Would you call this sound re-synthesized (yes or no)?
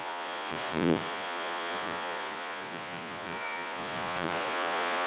yes